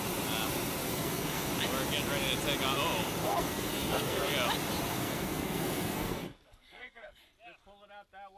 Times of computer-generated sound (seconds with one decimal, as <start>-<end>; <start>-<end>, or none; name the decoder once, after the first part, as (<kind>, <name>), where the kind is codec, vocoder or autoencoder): 0.8-1.5 (codec, SNAC); 3.2-4.3; 4.9-7.2